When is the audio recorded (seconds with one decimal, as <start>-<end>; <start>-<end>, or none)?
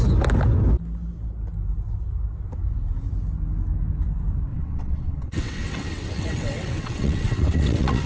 0.0-4.5